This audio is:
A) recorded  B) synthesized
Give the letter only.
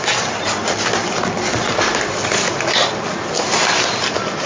A